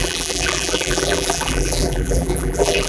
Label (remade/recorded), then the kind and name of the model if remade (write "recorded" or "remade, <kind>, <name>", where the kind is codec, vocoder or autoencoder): remade, vocoder, BigVGAN v2